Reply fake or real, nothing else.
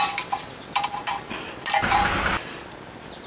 real